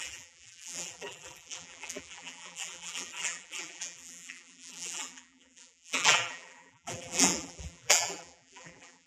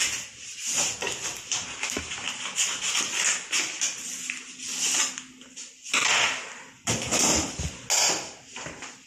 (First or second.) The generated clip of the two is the first